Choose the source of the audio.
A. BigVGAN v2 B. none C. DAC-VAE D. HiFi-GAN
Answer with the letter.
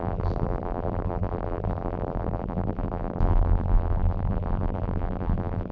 A